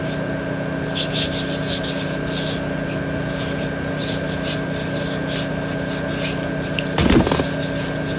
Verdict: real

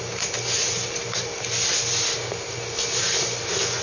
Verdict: real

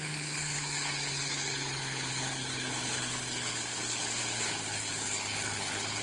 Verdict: fake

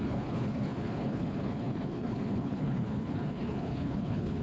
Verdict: fake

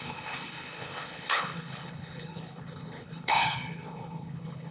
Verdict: fake